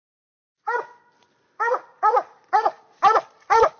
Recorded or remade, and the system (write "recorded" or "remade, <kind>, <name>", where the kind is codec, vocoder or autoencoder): recorded